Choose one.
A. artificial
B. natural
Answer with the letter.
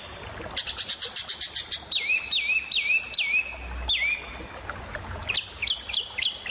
B